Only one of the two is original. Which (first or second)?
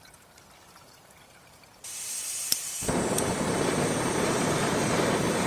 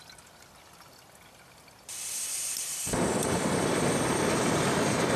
second